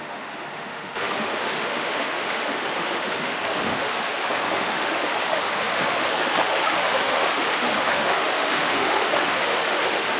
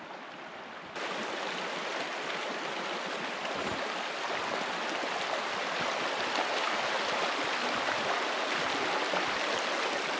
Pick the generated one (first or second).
first